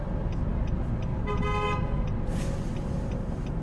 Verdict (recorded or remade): recorded